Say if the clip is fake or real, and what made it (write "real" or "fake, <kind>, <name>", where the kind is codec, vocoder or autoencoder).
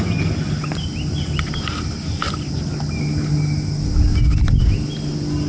real